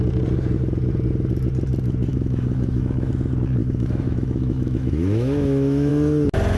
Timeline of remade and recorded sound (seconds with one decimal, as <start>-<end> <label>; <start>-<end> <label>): 0.0-2.1 recorded; 2.1-3.1 remade; 3.1-3.6 recorded; 3.6-5.9 remade; 5.9-6.6 recorded